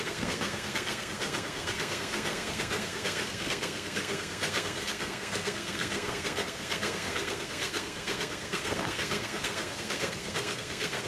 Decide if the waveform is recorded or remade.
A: remade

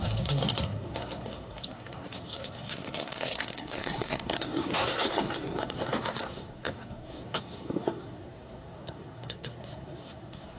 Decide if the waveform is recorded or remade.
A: remade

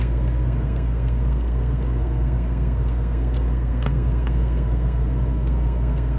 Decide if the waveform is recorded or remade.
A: remade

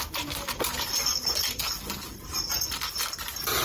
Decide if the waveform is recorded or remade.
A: recorded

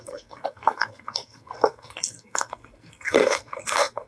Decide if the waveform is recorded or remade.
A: remade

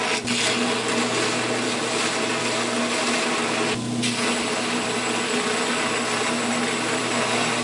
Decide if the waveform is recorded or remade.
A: recorded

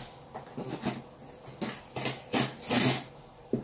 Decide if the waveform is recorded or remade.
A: recorded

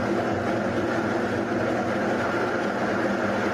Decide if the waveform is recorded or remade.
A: recorded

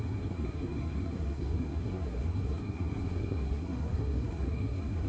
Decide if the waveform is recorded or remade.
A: remade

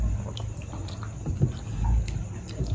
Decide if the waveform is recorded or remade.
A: recorded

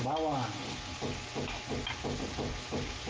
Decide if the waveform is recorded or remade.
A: recorded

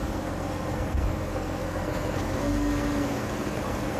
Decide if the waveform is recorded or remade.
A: remade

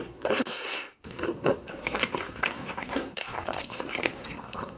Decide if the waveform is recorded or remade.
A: remade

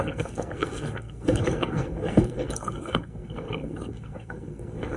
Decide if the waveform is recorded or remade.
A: remade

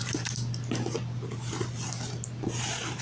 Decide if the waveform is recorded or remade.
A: recorded